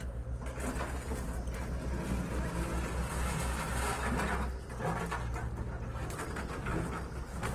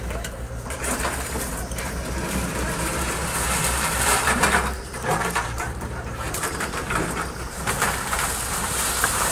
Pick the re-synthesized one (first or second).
second